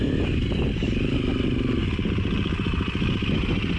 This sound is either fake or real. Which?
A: real